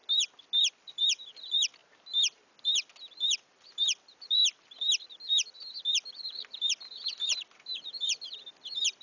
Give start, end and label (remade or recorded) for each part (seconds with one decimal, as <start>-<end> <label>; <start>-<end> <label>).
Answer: 0.0-0.7 recorded; 0.7-1.8 remade; 1.8-3.2 recorded; 3.2-4.4 remade; 4.4-5.3 recorded; 5.3-9.0 remade